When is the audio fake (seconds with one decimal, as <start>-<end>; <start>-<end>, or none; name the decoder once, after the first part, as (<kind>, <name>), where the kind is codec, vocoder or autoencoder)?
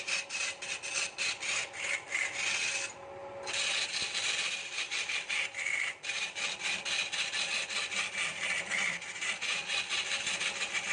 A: none